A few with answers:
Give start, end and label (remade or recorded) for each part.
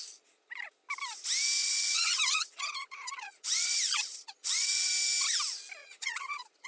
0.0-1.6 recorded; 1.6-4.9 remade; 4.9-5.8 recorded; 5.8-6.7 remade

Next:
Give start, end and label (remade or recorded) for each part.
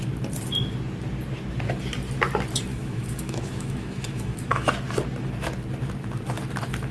0.0-2.7 recorded; 2.7-4.7 remade; 4.7-6.9 recorded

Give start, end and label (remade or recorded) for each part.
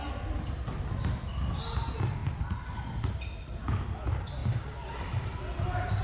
0.0-6.0 recorded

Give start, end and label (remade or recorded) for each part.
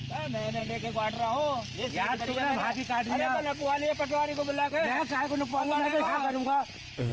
0.0-0.6 remade; 0.6-3.6 recorded; 3.6-4.7 remade; 4.7-5.5 recorded; 5.5-7.1 remade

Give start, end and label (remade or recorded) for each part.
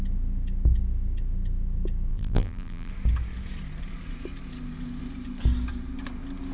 0.0-2.1 recorded; 2.1-2.9 remade; 2.9-6.5 recorded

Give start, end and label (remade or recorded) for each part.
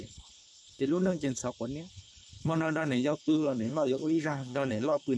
0.0-1.4 remade; 1.4-1.9 recorded; 1.9-5.2 remade